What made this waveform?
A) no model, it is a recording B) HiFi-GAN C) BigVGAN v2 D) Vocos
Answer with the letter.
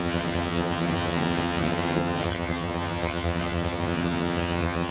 B